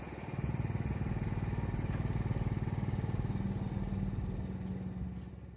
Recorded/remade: recorded